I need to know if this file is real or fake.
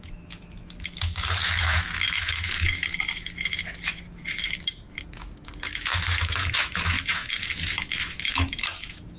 fake